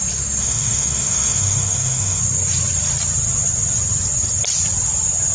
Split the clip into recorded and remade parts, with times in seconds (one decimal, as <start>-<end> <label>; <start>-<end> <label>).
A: 0.0-0.4 recorded; 0.4-2.2 remade; 2.2-5.3 recorded